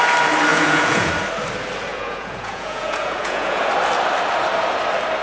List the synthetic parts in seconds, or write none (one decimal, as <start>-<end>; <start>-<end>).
0.5-1.1; 1.9-3.6